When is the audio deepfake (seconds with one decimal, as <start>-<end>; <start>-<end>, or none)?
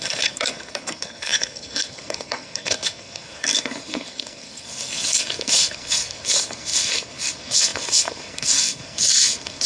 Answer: 0.0-9.7